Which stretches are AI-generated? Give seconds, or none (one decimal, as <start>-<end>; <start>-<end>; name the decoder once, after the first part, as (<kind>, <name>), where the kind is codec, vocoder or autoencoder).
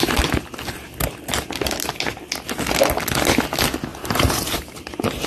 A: 3.9-5.3 (vocoder, BigVGAN v2)